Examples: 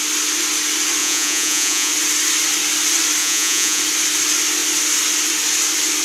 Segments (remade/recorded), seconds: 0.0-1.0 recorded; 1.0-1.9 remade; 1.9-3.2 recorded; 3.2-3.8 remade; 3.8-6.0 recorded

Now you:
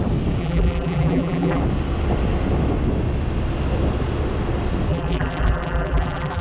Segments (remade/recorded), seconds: 0.0-0.4 recorded; 0.4-1.6 remade; 1.6-4.9 recorded; 4.9-6.4 remade

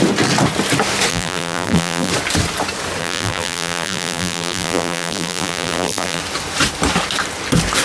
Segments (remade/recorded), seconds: 0.0-1.1 recorded; 1.1-2.1 remade; 2.1-3.0 recorded; 3.0-6.2 remade; 6.2-7.8 recorded

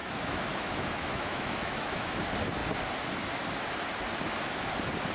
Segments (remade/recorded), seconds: 0.0-2.2 remade; 2.2-5.1 recorded

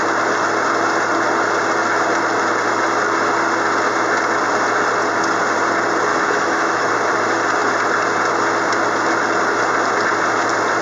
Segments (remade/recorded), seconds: 0.0-6.1 recorded; 6.1-6.9 remade; 6.9-10.8 recorded

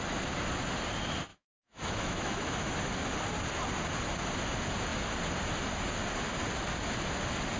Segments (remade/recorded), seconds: 0.0-1.3 recorded; 1.3-2.7 remade; 2.7-7.6 recorded